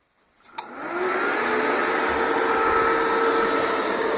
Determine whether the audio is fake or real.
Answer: real